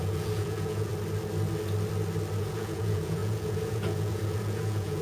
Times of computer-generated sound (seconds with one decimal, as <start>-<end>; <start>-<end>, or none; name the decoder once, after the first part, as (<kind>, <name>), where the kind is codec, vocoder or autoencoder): 0.0-0.9 (vocoder, Vocos); 2.4-5.0